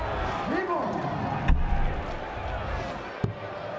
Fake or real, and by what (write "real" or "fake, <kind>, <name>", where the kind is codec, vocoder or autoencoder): real